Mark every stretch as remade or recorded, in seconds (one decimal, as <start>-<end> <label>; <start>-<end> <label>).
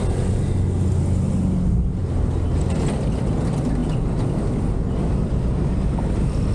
0.0-6.5 recorded